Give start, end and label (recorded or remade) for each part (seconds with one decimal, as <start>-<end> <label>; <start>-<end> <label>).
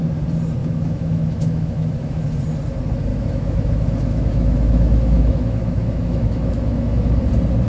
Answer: 0.0-0.6 recorded; 0.6-2.4 remade; 2.4-3.1 recorded; 3.1-7.2 remade; 7.2-7.7 recorded